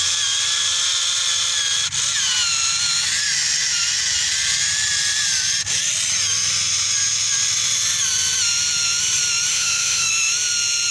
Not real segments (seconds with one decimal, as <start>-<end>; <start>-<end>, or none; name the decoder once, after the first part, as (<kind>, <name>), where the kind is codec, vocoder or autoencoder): 9.5-10.1 (autoencoder, DAC-VAE)